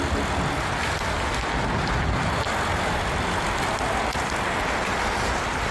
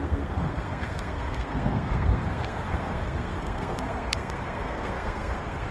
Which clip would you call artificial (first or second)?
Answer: second